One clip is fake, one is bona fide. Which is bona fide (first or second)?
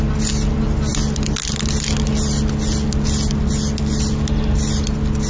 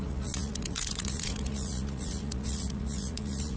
first